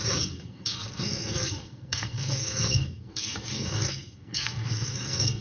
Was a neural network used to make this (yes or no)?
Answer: yes